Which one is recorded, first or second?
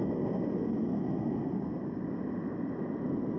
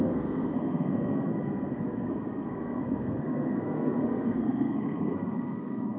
first